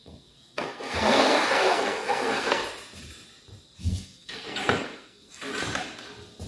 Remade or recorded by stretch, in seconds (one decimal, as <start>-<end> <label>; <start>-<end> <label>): 0.0-2.6 remade; 2.6-3.8 recorded; 3.8-5.5 remade; 5.5-6.5 recorded